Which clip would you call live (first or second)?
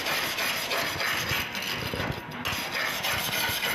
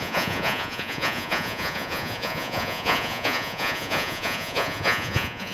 first